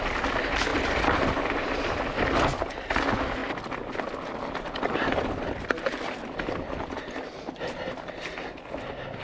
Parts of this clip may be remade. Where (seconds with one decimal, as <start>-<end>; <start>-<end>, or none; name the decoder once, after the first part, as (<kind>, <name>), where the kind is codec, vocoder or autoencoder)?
0.7-2.0 (vocoder, BigVGAN v2)